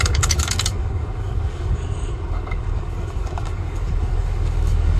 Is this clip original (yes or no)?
no